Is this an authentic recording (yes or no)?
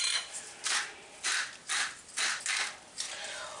yes